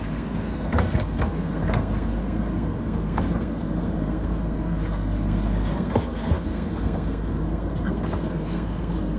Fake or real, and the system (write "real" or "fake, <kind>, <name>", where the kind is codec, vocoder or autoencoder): fake, codec, SNAC